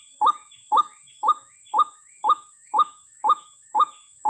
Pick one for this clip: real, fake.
fake